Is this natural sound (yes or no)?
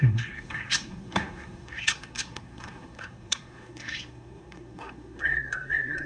no